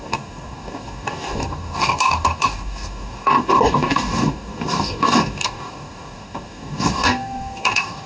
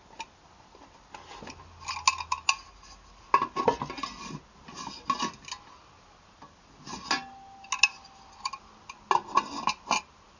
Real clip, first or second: second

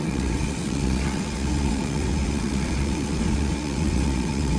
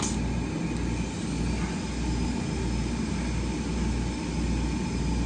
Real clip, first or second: second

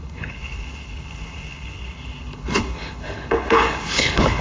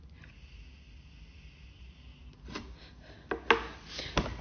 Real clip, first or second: second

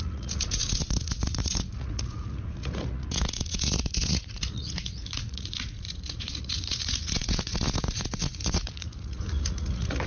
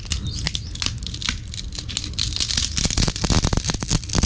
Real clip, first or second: second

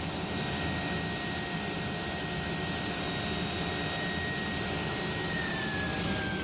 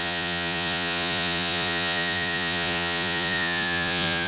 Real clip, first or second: first